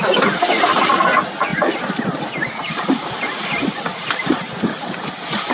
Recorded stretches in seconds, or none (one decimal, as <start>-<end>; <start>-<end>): 0.0-5.5